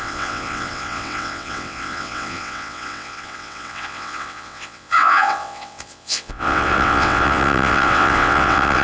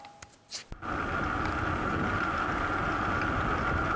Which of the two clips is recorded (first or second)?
second